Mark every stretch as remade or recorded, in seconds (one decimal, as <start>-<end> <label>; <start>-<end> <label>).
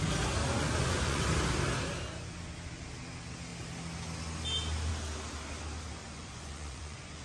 0.0-0.4 recorded; 0.4-1.2 remade; 1.2-6.0 recorded; 6.0-7.2 remade